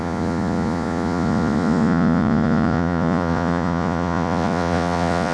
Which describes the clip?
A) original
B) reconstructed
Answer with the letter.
B